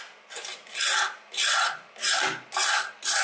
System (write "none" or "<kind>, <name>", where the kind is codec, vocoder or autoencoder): none